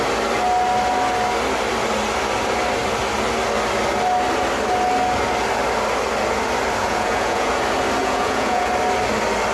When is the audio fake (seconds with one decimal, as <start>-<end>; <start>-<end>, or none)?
6.8-7.5; 8.0-8.7